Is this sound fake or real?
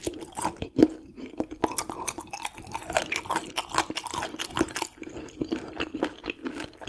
real